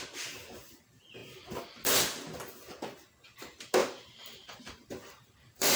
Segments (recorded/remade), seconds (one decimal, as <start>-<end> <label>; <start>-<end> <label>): 0.0-3.8 recorded; 3.8-5.8 remade